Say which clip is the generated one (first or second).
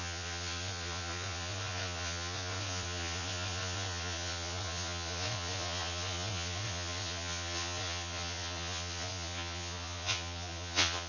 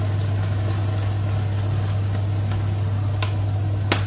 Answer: first